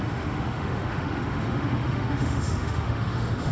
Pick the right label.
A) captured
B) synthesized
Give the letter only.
B